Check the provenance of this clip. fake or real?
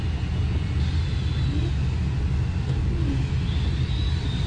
real